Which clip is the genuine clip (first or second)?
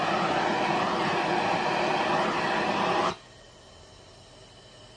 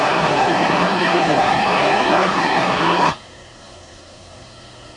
first